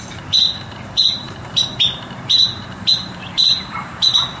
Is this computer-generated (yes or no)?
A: yes